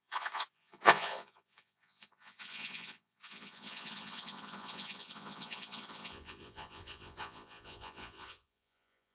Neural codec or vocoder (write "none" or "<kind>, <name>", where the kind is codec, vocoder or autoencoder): vocoder, Vocos